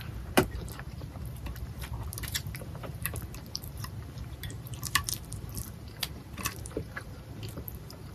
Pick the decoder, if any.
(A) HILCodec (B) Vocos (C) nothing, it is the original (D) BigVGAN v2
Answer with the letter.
D